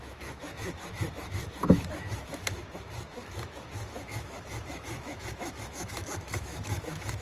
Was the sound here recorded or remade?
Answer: remade